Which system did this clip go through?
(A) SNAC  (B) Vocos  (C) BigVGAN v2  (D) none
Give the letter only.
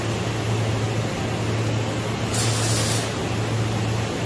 D